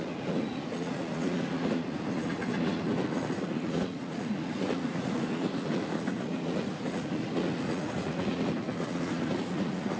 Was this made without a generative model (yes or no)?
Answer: no